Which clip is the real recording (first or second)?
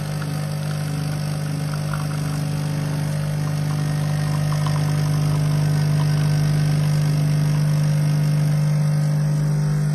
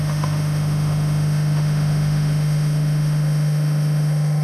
first